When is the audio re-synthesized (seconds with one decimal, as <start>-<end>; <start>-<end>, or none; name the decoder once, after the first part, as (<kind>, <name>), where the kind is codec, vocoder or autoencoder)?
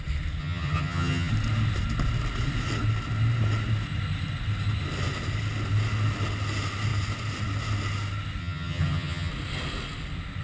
0.4-1.3 (vocoder, HiFi-GAN); 8.4-9.3